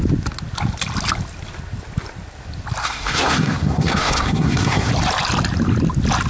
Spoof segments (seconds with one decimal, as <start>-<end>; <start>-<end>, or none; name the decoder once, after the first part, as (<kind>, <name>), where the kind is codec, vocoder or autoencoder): 2.8-4.9 (codec, SNAC)